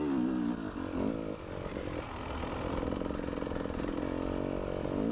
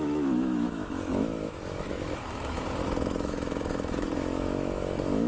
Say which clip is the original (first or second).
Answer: first